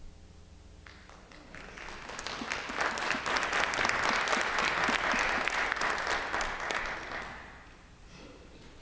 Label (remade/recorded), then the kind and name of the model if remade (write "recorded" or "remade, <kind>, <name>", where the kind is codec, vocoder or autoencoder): recorded